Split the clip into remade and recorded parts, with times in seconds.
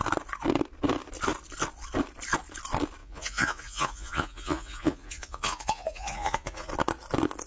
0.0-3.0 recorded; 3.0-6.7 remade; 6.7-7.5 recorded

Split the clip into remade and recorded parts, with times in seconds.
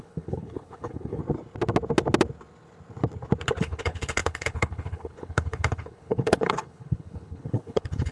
0.0-1.2 remade; 1.2-3.6 recorded; 3.6-8.1 remade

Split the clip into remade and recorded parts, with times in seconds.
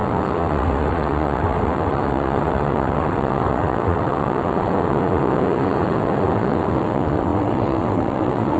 0.0-8.6 remade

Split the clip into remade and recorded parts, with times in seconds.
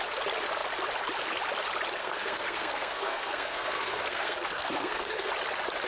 0.0-2.0 recorded; 2.0-5.3 remade; 5.3-5.9 recorded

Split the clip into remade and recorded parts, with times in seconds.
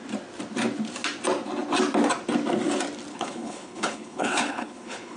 0.0-3.1 recorded; 3.1-5.2 remade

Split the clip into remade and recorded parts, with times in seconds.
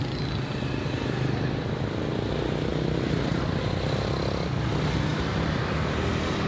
0.0-2.7 recorded; 2.7-3.6 remade; 3.6-5.1 recorded; 5.1-6.1 remade; 6.1-6.5 recorded